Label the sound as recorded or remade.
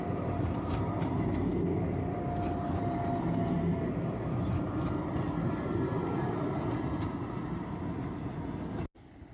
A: recorded